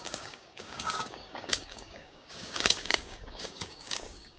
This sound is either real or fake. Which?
fake